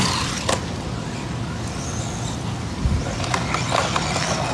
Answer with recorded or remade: recorded